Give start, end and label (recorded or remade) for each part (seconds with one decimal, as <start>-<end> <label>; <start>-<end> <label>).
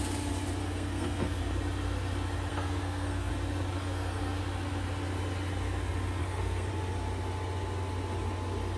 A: 0.0-0.6 recorded; 0.6-1.4 remade; 1.4-2.5 recorded; 2.5-3.3 remade; 3.3-3.8 recorded; 3.8-4.4 remade; 4.4-6.2 recorded; 6.2-6.7 remade; 6.7-8.8 recorded